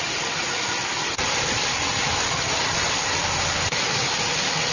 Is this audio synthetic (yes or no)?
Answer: no